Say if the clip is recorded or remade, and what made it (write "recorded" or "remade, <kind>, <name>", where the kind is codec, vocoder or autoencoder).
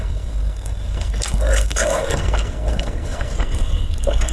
remade, codec, SNAC